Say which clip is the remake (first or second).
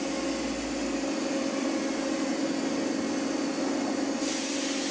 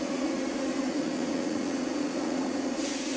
second